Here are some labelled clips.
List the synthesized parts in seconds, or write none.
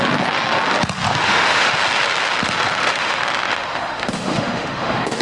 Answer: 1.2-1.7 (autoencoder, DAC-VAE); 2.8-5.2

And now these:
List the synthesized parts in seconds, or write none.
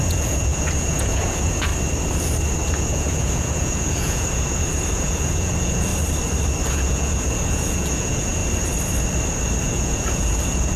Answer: 0.0-1.7 (vocoder, Vocos); 2.8-5.9; 6.7-8.4; 9.6-10.8